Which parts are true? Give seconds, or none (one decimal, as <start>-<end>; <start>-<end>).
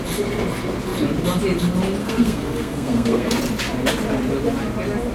0.0-2.0; 3.4-5.1